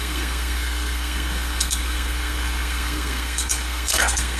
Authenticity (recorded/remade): remade